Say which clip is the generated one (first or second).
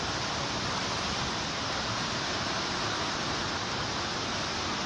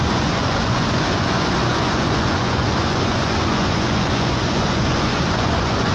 second